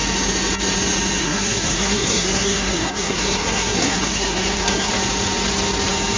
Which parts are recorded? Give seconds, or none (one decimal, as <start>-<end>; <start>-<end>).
0.0-1.2; 4.9-6.2